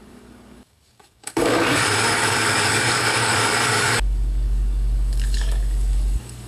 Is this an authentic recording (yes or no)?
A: no